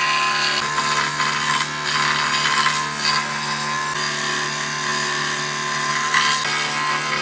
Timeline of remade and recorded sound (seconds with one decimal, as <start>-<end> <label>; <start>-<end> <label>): 0.0-7.2 recorded